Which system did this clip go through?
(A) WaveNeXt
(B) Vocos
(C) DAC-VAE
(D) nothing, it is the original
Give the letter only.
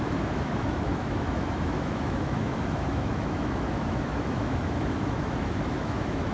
C